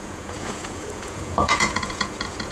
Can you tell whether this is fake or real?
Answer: fake